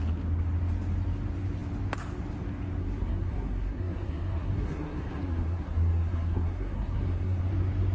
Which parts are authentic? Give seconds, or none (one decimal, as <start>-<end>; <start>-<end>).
0.0-2.8; 7.5-7.9